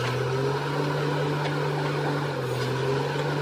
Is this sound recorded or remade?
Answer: recorded